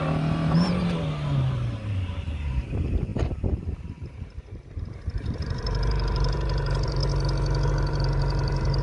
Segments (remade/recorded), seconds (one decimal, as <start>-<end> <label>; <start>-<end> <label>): 0.0-7.0 remade; 7.0-7.7 recorded; 7.7-8.8 remade